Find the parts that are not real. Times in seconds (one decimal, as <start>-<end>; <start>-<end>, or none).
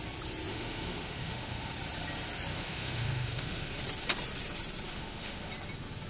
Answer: 0.5-1.7; 2.5-3.8; 4.9-5.5